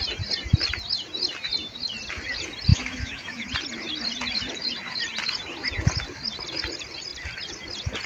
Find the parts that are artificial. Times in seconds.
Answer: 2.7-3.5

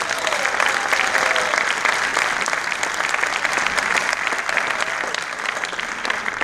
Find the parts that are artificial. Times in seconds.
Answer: none